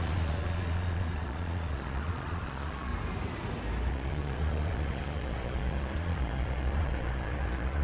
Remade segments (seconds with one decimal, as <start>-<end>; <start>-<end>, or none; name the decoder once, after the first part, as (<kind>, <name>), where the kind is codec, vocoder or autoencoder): 0.0-2.9 (vocoder, Vocos); 3.9-7.8